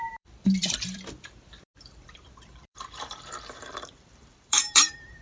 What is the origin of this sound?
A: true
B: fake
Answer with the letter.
B